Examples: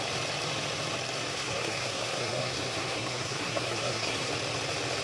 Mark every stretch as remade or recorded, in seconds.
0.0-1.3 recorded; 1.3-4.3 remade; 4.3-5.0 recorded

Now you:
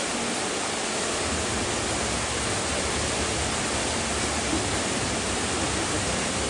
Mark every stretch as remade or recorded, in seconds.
0.0-6.5 recorded